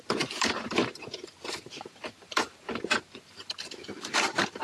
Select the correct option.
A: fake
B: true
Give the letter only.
A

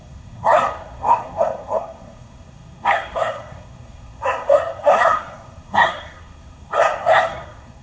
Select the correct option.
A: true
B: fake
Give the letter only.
B